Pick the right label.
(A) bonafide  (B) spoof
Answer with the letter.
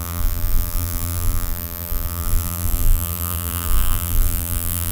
B